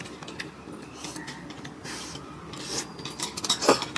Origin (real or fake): real